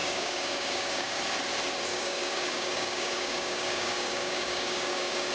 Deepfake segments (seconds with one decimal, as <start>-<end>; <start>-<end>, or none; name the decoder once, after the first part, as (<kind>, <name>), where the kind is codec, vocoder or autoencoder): 0.0-1.2 (codec, DAC); 1.9-5.3